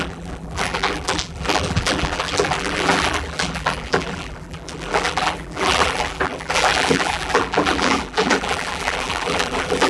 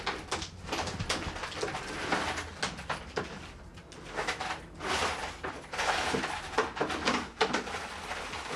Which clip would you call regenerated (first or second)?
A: first